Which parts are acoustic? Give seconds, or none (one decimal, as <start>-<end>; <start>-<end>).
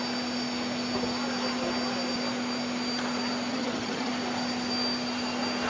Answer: 0.0-3.5; 4.1-5.7